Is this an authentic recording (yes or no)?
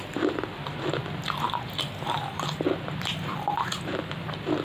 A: no